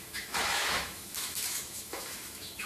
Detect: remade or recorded remade